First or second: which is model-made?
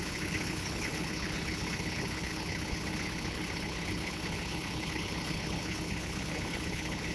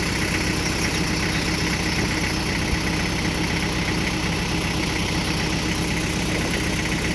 first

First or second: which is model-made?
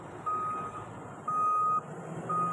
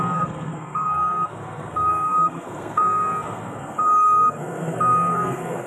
second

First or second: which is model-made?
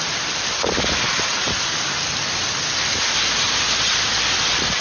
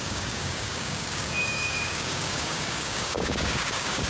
second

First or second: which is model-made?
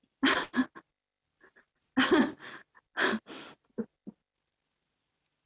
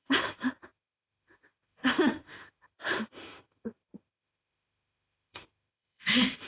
second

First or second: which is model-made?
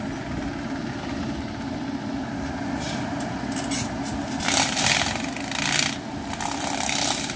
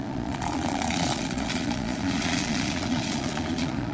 second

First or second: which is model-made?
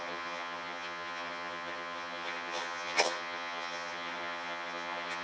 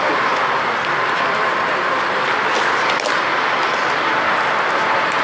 first